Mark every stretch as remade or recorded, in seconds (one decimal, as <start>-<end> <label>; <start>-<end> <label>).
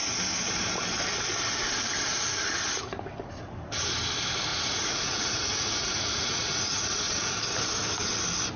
0.0-4.5 recorded; 4.5-7.3 remade; 7.3-8.6 recorded